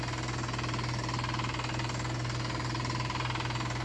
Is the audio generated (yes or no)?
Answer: no